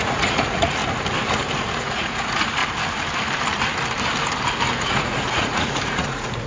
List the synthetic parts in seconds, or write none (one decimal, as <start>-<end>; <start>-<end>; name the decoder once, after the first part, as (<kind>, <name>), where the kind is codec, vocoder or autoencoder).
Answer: 0.0-0.8 (vocoder, Vocos); 1.6-2.6; 4.8-6.5